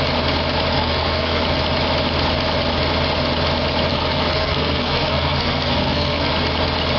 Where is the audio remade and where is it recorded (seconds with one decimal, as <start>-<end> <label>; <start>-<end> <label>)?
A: 0.0-0.7 recorded; 0.7-1.4 remade; 1.4-3.9 recorded; 3.9-6.3 remade; 6.3-7.0 recorded